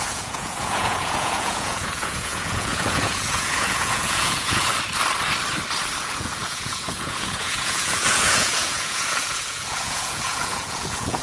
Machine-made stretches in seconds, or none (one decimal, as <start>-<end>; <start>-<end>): 0.0-4.7; 6.0-11.2